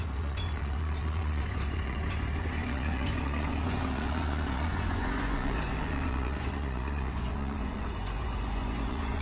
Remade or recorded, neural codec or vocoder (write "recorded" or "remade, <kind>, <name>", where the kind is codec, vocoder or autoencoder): remade, vocoder, Vocos